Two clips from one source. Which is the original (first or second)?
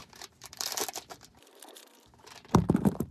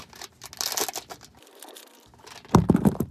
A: second